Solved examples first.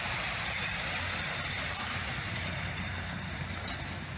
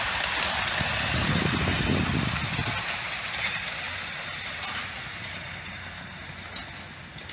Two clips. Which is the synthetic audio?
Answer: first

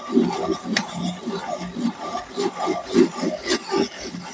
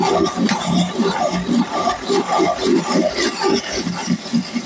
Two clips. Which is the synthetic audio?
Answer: second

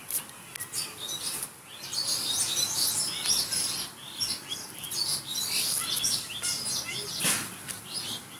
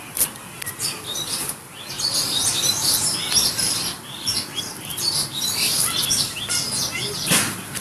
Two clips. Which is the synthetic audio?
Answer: second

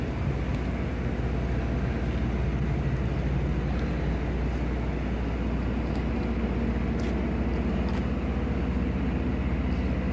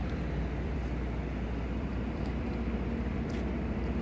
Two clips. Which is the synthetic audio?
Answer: second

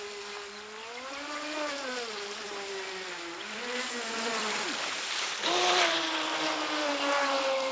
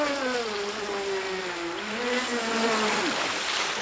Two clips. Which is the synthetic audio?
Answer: first